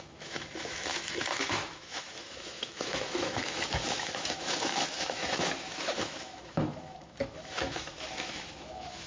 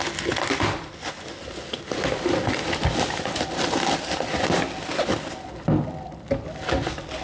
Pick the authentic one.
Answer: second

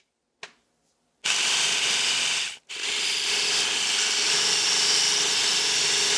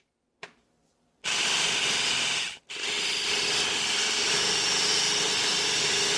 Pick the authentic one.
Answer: first